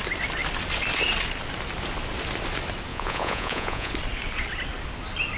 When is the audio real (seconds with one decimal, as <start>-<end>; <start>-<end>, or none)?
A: 0.0-2.9; 3.9-5.4

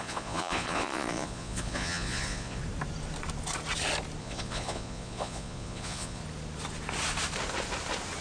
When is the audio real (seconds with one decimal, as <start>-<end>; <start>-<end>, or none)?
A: 2.6-4.2; 6.2-8.2

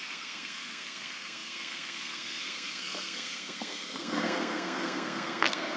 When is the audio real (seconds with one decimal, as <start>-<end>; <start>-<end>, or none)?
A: none

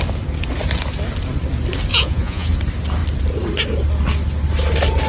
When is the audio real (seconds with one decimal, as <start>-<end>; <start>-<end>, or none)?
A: 0.0-1.9; 2.6-5.1

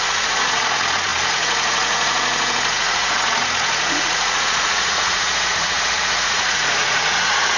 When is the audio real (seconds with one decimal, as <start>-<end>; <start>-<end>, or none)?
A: none